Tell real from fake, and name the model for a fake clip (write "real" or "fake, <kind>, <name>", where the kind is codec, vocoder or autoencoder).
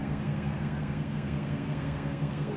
fake, codec, SNAC